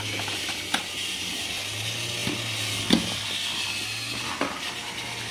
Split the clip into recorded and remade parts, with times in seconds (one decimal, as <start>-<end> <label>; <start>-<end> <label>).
0.0-5.3 recorded